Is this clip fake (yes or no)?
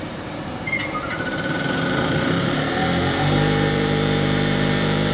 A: yes